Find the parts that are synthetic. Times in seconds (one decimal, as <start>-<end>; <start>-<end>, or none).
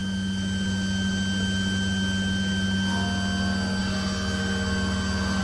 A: none